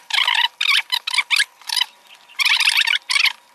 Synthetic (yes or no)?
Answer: no